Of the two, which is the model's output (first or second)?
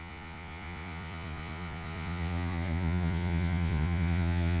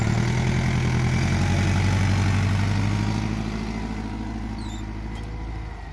first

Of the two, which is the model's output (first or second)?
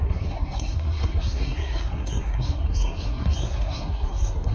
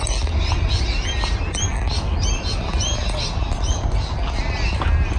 first